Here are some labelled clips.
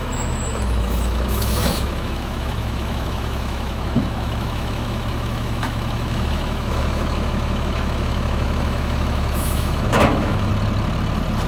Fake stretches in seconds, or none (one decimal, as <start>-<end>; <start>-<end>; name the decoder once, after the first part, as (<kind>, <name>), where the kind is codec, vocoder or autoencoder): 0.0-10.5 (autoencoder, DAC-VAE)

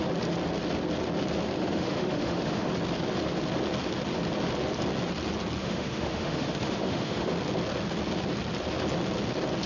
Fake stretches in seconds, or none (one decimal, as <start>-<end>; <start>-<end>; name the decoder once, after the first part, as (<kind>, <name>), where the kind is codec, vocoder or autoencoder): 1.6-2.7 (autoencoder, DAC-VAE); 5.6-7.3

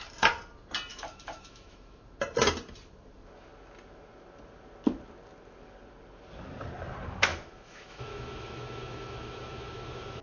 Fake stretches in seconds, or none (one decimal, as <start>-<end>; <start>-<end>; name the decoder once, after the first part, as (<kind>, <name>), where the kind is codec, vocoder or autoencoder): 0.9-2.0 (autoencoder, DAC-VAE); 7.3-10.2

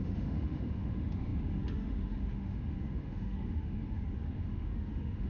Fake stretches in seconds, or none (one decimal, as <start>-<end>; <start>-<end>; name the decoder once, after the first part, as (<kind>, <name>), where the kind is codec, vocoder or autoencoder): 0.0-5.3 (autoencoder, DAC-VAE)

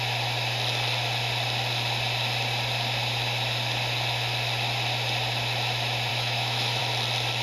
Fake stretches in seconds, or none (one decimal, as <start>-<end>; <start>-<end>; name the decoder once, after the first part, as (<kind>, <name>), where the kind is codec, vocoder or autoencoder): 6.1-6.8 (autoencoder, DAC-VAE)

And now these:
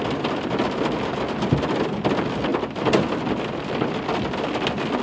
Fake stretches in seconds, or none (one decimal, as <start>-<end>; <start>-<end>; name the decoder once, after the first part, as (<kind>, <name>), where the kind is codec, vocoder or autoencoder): none